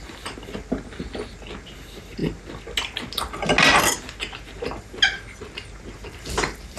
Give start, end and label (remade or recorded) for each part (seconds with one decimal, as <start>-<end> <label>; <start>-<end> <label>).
0.0-6.8 recorded